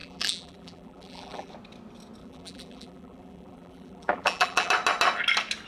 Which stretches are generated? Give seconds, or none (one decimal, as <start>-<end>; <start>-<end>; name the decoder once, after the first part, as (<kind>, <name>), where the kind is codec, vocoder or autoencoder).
0.0-1.5 (vocoder, BigVGAN v2); 2.2-4.7